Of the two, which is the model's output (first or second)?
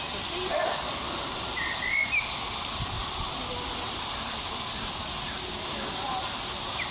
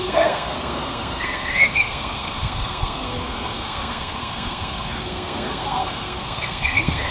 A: second